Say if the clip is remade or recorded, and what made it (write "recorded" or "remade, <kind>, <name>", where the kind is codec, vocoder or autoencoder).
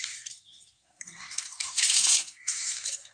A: remade, codec, SNAC